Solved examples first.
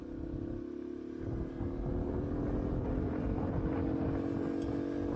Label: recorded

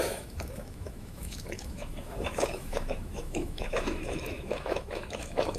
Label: remade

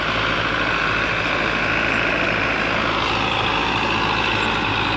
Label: recorded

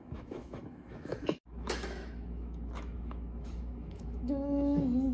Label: remade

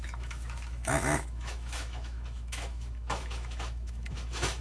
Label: remade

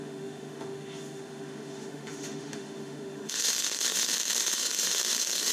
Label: remade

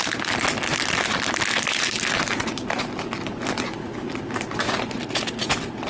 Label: recorded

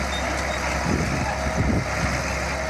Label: recorded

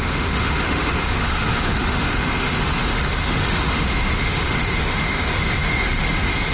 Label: remade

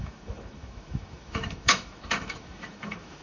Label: remade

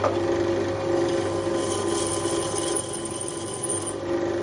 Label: recorded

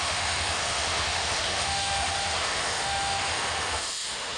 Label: remade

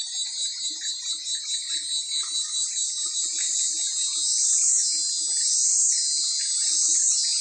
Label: recorded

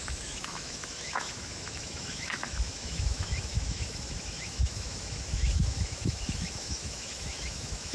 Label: remade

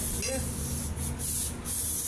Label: recorded